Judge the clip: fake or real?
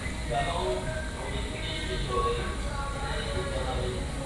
real